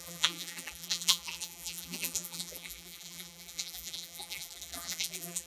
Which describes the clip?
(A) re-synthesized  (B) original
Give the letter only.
A